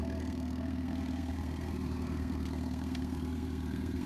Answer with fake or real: fake